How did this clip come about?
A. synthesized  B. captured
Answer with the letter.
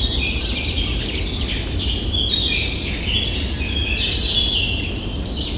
B